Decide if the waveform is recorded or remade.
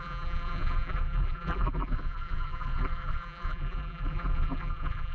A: remade